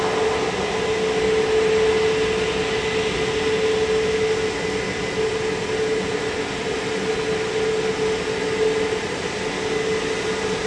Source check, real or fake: real